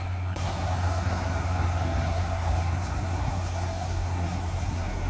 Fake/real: fake